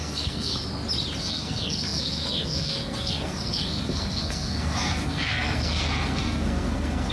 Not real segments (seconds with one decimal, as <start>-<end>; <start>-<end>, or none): 0.0-0.5; 1.2-7.1